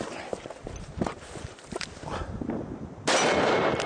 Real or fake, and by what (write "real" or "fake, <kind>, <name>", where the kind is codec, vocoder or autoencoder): real